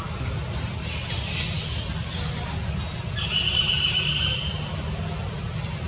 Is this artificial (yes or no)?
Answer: no